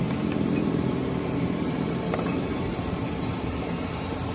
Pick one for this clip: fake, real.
fake